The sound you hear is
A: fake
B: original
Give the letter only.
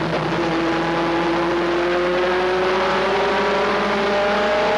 B